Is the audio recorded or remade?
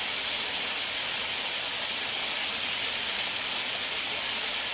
recorded